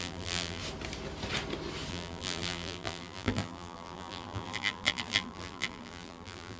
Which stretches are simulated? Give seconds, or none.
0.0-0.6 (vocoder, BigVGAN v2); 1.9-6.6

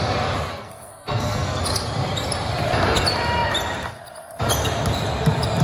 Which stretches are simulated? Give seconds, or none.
0.5-1.6 (codec, SNAC)

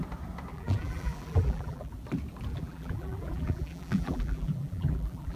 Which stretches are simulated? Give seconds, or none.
0.5-1.9 (vocoder, BigVGAN v2); 2.5-5.4

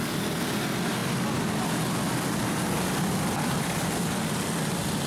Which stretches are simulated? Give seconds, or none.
0.0-1.0 (vocoder, BigVGAN v2); 2.5-5.1